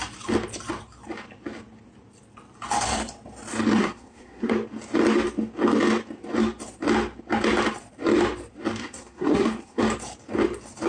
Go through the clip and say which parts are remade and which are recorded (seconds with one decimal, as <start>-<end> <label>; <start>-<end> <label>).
0.0-3.8 recorded; 3.8-4.5 remade; 4.5-8.8 recorded; 8.8-9.8 remade; 9.8-10.9 recorded